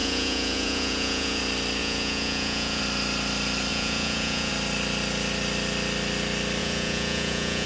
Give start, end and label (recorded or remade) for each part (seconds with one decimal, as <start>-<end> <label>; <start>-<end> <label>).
0.0-1.4 remade; 1.4-1.8 recorded; 1.8-2.8 remade; 2.8-3.7 recorded; 3.7-4.5 remade; 4.5-6.6 recorded; 6.6-7.7 remade